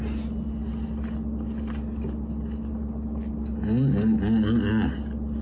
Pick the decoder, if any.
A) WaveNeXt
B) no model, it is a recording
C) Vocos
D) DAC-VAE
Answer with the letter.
B